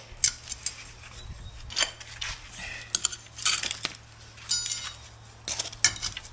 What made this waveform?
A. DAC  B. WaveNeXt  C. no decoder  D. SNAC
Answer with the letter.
C